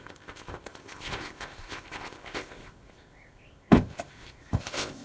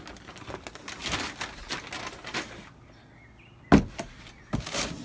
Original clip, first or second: second